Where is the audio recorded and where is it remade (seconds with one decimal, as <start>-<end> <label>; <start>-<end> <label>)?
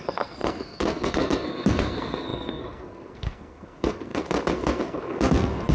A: 0.0-5.7 remade